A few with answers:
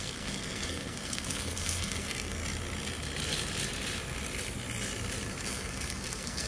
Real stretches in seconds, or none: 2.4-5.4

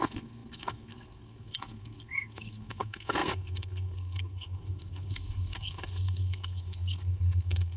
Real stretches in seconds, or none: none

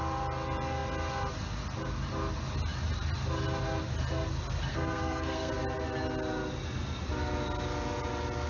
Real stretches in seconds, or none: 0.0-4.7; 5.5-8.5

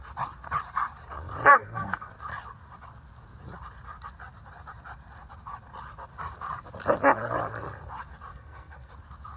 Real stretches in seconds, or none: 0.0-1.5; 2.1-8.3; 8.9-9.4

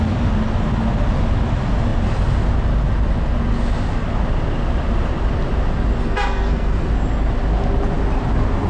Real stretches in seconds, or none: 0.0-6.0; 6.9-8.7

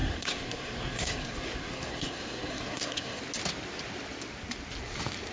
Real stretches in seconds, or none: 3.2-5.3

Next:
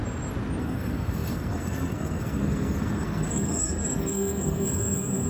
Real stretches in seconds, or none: 0.0-0.6